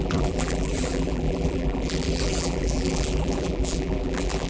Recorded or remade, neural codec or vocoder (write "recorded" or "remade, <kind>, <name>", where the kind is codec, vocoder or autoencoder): remade, vocoder, BigVGAN v2